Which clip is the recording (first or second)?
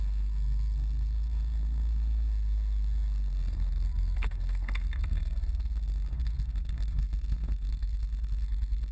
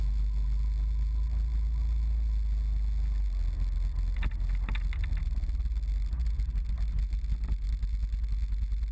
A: second